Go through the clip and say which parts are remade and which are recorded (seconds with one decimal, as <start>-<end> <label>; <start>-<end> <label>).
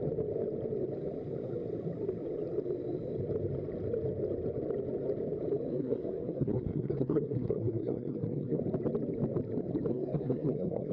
0.0-5.7 recorded; 5.7-8.6 remade; 8.6-9.9 recorded; 9.9-10.9 remade